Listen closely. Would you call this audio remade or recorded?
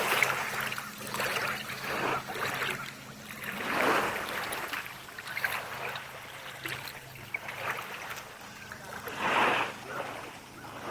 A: recorded